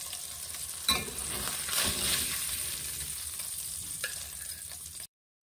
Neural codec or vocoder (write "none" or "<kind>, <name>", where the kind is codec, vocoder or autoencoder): vocoder, BigVGAN v2